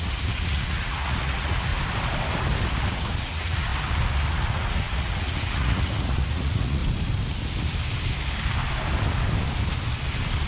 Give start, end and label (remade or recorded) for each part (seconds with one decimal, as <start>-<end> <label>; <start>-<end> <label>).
0.0-1.7 remade; 1.7-2.9 recorded; 2.9-3.7 remade; 3.7-4.3 recorded; 4.3-6.8 remade; 6.8-10.5 recorded